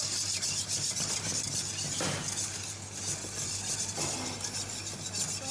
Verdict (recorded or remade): recorded